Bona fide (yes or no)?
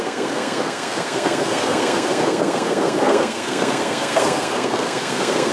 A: no